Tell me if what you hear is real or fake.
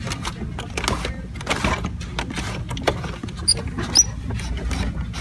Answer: real